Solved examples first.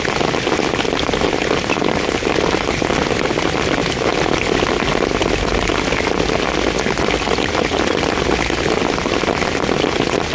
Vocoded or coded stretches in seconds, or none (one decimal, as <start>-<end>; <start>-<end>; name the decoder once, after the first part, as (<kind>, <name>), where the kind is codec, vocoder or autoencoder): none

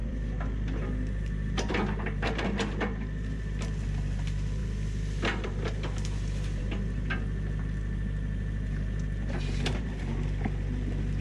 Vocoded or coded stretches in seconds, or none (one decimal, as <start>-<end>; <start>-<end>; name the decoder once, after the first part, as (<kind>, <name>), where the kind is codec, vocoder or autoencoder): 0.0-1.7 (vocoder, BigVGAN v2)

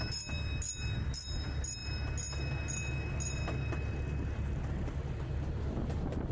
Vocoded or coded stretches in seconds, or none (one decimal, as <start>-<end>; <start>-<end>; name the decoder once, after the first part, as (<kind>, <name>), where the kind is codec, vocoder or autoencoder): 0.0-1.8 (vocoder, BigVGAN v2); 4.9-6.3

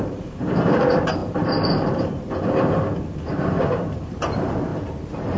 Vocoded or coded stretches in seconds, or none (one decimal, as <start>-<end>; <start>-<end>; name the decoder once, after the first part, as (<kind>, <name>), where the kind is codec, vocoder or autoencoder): 0.0-5.4 (vocoder, BigVGAN v2)

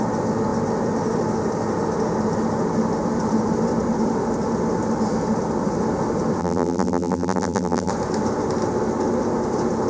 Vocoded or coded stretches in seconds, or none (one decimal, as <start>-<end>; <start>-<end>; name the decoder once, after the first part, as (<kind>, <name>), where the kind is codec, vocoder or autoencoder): 6.4-7.9 (vocoder, BigVGAN v2)

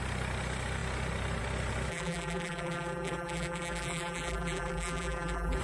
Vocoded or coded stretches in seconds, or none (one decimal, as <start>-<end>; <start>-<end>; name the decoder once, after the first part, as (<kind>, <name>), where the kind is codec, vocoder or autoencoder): 1.9-5.6 (vocoder, BigVGAN v2)